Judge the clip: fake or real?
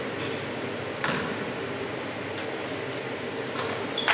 real